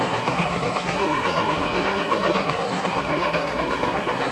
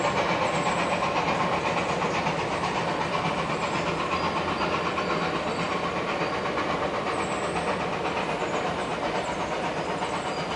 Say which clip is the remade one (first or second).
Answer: first